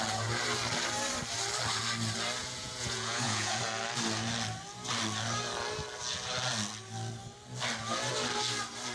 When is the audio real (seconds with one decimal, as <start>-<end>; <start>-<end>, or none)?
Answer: 0.0-2.4; 3.6-8.9